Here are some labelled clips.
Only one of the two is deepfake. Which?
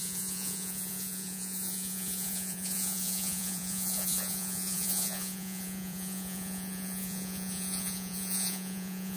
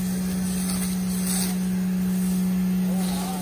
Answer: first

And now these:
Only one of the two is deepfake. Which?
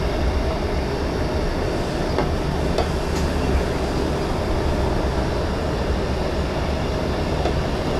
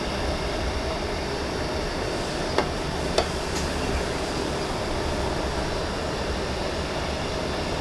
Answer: second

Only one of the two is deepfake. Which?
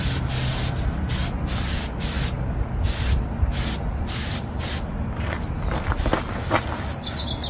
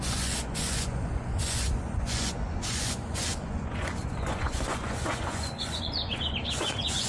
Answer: second